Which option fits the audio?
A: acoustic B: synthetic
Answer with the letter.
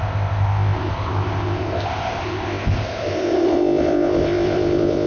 B